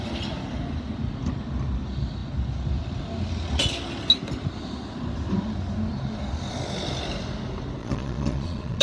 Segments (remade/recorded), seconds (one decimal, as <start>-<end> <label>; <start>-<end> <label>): 0.0-7.8 recorded; 7.8-8.8 remade